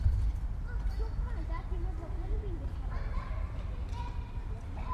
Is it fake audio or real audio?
real